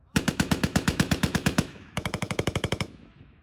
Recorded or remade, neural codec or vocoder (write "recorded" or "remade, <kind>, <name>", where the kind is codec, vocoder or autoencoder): remade, autoencoder, DAC-VAE